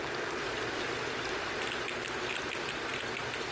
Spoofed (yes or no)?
no